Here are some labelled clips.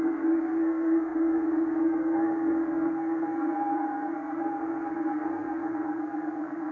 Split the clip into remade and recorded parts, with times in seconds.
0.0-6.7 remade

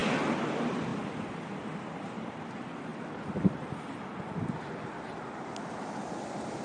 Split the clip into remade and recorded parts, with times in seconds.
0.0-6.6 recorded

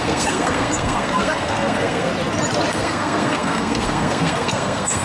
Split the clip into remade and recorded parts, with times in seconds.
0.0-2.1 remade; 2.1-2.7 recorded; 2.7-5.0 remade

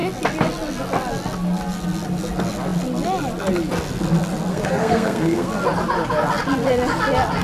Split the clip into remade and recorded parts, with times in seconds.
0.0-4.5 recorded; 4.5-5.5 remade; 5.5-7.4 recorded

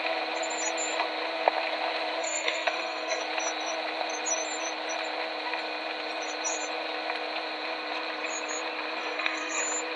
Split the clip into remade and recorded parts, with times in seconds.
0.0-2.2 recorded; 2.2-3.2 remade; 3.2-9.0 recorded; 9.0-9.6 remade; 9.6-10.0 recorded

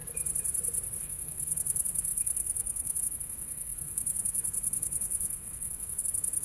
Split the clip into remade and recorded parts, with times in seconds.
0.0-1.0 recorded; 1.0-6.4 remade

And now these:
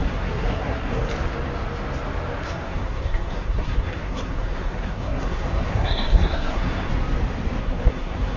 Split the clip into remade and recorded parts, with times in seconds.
0.0-1.0 remade; 1.0-2.4 recorded; 2.4-6.9 remade; 6.9-7.6 recorded; 7.6-8.4 remade